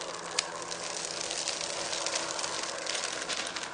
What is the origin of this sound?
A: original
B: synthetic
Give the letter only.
A